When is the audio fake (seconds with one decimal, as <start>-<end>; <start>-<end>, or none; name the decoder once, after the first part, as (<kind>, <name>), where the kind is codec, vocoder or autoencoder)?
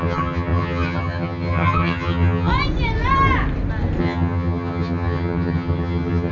0.0-2.5 (vocoder, HiFi-GAN); 4.0-6.3